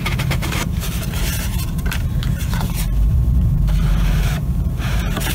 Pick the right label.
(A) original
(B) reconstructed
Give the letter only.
B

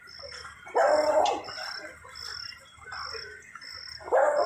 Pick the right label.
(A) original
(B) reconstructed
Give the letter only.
A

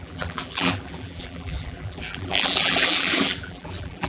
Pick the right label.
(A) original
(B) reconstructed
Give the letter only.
B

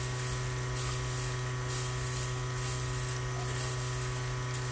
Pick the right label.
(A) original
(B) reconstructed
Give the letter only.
A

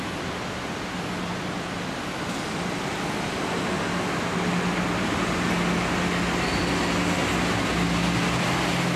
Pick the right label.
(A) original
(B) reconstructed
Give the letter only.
A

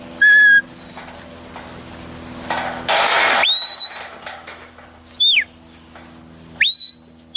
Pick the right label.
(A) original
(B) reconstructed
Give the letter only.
A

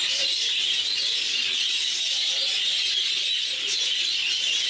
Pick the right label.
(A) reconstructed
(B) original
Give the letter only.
B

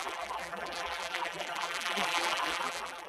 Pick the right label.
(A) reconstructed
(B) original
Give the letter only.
A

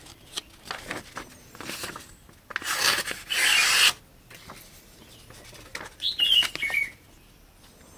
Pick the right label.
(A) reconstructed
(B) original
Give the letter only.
B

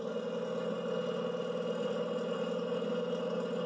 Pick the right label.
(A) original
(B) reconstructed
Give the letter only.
A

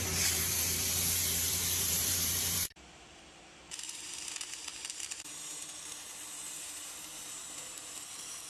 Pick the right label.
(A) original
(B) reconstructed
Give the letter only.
B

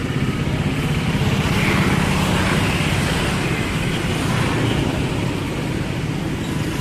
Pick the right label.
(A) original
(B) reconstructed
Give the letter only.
A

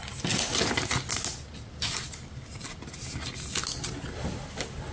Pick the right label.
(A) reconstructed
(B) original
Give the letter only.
B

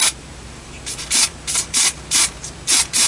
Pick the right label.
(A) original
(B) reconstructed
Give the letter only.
B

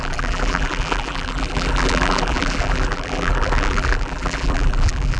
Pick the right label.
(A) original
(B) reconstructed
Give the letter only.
B